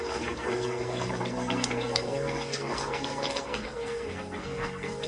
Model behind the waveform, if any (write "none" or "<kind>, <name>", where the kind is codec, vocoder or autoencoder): codec, SNAC